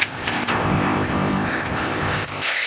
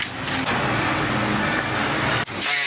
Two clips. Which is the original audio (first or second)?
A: second